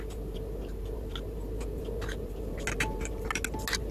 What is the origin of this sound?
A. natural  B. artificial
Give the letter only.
A